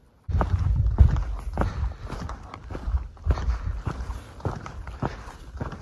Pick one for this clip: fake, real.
real